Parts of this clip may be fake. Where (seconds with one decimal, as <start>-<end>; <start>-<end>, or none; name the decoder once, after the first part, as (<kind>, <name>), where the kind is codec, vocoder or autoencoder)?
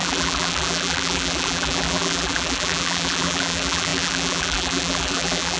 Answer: 0.0-5.6 (vocoder, BigVGAN v2)